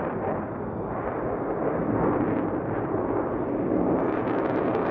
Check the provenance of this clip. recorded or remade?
remade